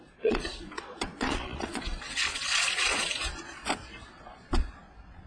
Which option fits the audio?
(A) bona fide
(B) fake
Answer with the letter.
B